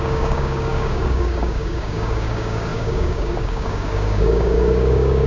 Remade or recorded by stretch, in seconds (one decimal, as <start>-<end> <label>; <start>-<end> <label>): 0.0-5.3 remade